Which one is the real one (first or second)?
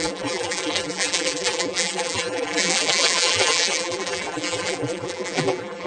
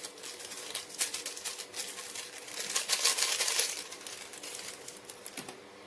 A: second